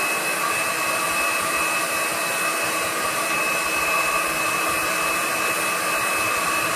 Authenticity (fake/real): real